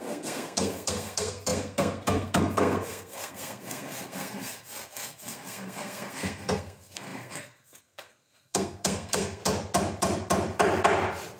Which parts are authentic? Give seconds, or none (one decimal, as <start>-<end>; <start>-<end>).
9.4-11.4